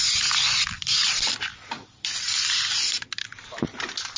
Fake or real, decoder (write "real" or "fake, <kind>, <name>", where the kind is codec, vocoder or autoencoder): real